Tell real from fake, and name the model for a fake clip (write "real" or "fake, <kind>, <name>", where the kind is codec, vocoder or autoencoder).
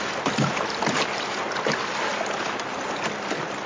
real